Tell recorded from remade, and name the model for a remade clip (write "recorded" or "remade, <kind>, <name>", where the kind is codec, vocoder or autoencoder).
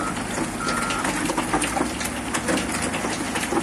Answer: recorded